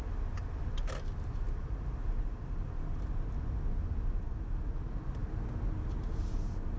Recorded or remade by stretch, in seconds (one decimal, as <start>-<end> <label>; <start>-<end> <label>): 0.0-6.8 recorded